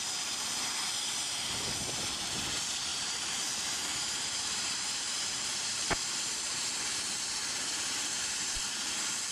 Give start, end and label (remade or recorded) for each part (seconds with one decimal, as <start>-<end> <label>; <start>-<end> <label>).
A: 0.0-2.9 recorded; 2.9-6.6 remade; 6.6-9.3 recorded

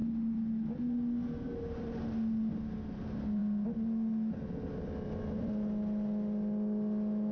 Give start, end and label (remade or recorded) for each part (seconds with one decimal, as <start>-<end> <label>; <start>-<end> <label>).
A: 0.0-7.3 recorded

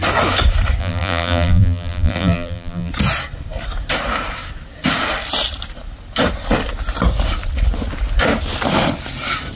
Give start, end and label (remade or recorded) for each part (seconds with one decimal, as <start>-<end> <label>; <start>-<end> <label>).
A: 0.0-0.8 recorded; 0.8-2.9 remade; 2.9-9.6 recorded

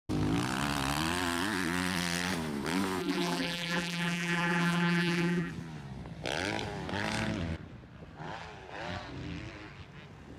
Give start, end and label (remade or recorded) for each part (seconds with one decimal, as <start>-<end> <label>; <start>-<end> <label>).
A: 0.0-3.0 recorded; 3.0-5.5 remade; 5.5-10.4 recorded

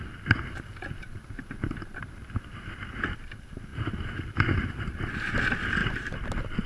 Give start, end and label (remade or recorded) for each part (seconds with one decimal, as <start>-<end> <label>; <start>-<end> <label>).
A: 0.0-3.7 recorded; 3.7-5.1 remade; 5.1-5.8 recorded; 5.8-6.3 remade; 6.3-6.7 recorded

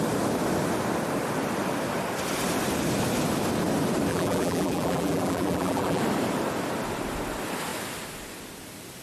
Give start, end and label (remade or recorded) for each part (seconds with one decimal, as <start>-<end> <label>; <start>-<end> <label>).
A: 0.0-4.1 recorded; 4.1-6.0 remade; 6.0-9.0 recorded

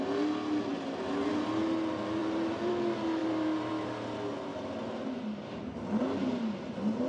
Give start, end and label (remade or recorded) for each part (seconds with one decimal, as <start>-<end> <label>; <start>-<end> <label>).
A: 0.0-2.2 recorded; 2.2-2.7 remade; 2.7-3.2 recorded; 3.2-3.7 remade; 3.7-4.5 recorded; 4.5-7.1 remade